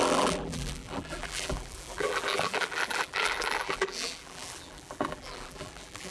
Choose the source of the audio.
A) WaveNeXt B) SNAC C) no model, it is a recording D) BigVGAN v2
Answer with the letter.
D